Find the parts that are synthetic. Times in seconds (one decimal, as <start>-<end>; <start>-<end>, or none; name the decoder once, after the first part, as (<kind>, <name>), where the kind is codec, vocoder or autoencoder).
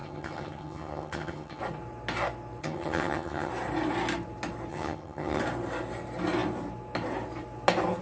0.0-1.6 (vocoder, HiFi-GAN); 2.6-3.5; 4.7-5.4